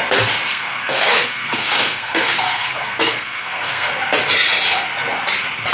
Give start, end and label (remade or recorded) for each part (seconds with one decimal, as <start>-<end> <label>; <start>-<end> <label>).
0.0-0.5 recorded; 0.5-3.9 remade; 3.9-5.7 recorded